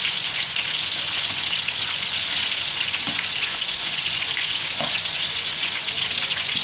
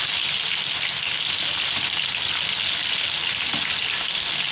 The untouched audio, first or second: second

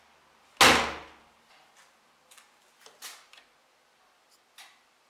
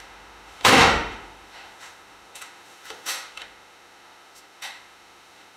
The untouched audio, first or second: first